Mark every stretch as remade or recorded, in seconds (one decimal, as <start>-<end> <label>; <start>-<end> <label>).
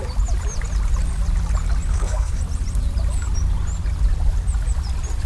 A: 0.0-1.9 recorded; 1.9-2.4 remade; 2.4-5.3 recorded